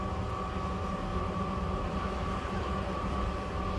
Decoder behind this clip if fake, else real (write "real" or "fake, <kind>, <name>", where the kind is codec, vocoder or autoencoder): real